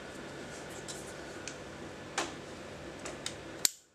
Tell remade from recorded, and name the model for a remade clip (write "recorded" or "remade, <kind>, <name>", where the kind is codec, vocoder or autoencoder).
recorded